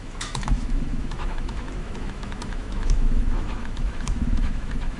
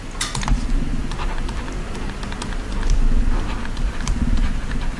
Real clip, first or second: second